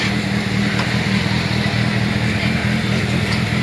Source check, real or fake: real